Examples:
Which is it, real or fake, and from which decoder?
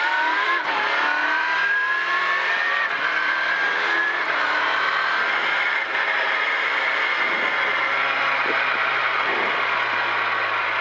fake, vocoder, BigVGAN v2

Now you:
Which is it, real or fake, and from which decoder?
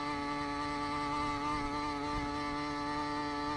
real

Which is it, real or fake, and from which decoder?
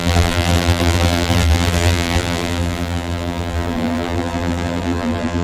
fake, vocoder, BigVGAN v2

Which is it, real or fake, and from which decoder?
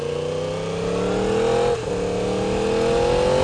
real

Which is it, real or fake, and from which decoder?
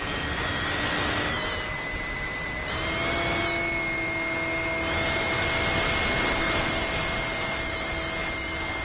real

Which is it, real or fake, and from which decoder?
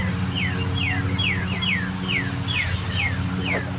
real